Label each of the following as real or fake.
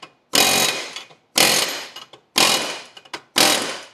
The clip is real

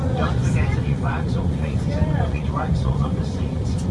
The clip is fake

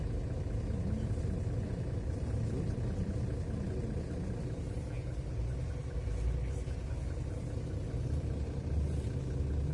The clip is real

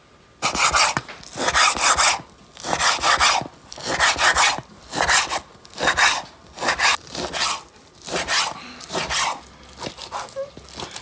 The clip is real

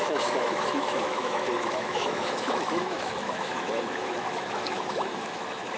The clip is fake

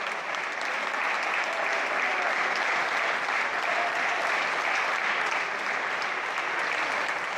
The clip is real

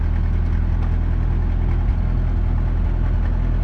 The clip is real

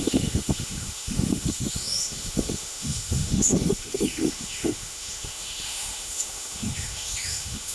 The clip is fake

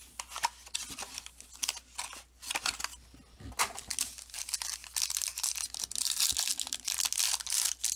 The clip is real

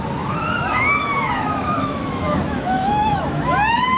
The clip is fake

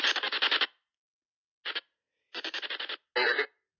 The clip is real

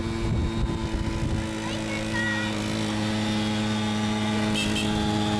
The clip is real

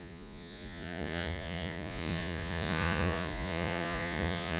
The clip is fake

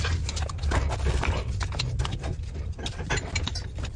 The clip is real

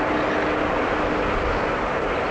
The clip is real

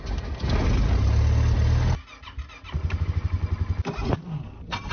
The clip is real